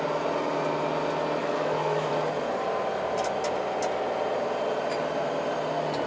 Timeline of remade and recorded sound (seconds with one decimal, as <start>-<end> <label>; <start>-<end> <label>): 0.0-1.4 recorded; 1.4-2.1 remade; 2.1-6.1 recorded